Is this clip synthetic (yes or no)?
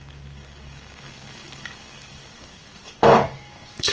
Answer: yes